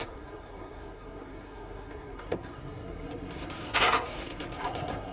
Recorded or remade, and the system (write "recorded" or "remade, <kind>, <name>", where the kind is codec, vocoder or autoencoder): remade, codec, SNAC